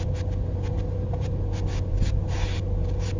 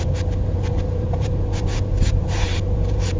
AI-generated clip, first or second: second